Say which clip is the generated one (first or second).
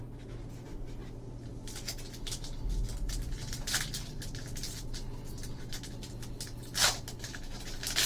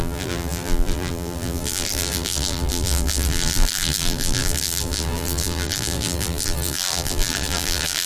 second